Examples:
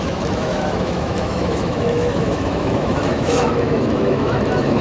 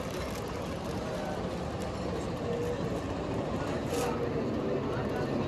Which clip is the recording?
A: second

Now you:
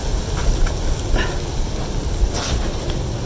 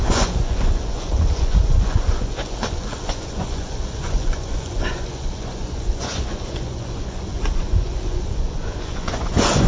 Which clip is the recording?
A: first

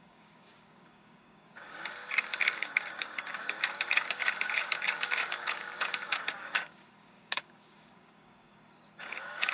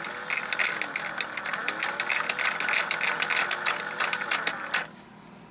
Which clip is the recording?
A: second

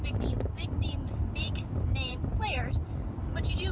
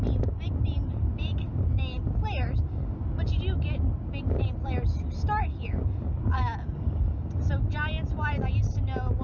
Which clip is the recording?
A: second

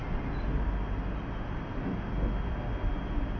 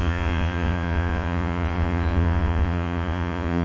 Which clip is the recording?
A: first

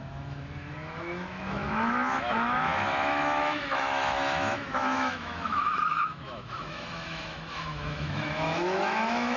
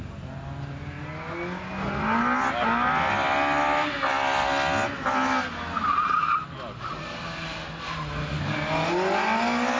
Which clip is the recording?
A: second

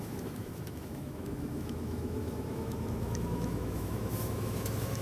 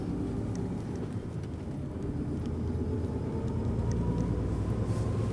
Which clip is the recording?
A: second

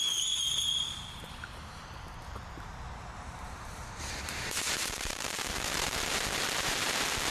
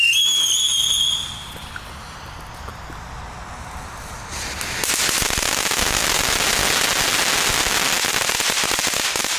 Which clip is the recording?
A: second